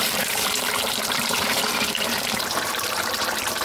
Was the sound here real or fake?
fake